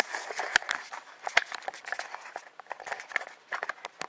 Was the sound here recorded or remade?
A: recorded